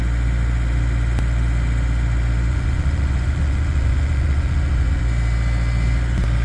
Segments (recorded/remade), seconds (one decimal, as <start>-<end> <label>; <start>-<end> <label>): 0.0-2.5 recorded; 2.5-5.0 remade; 5.0-6.4 recorded